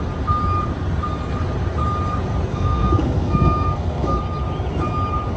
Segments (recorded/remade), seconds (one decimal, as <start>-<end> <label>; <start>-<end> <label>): 0.0-2.5 recorded; 2.5-4.2 remade; 4.2-5.4 recorded